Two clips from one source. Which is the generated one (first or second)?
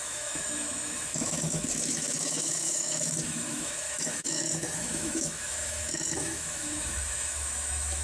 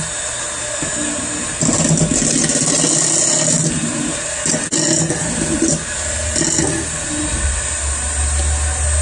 first